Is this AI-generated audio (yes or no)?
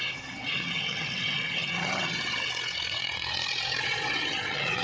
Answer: yes